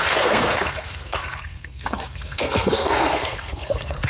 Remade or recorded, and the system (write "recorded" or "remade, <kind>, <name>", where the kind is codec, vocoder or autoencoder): remade, codec, SNAC